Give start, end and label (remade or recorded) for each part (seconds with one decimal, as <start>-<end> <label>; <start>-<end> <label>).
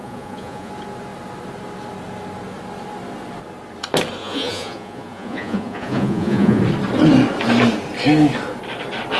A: 0.0-0.7 remade; 0.7-4.2 recorded; 4.2-6.6 remade; 6.6-9.2 recorded